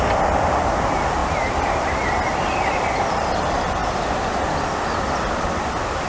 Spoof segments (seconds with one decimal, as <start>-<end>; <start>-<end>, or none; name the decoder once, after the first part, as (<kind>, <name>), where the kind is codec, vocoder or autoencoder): none